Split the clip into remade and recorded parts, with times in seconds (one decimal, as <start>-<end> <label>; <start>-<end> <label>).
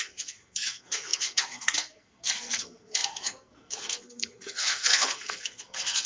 0.0-6.1 remade